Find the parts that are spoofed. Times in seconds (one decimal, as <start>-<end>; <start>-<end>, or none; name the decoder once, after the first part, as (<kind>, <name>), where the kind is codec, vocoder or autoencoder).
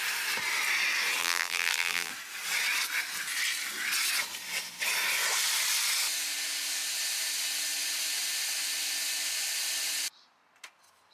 1.2-2.1 (vocoder, BigVGAN v2)